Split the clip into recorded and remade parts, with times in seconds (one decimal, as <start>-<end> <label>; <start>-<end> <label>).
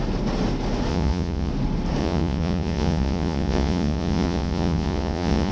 0.0-0.9 recorded; 0.9-1.5 remade; 1.5-2.0 recorded; 2.0-5.5 remade